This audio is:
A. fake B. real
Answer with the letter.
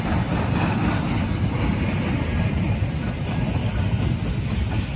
B